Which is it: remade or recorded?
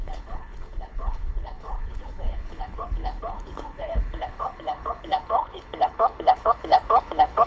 remade